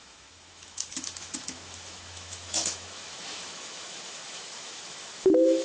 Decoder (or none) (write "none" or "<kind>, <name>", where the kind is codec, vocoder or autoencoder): autoencoder, DAC-VAE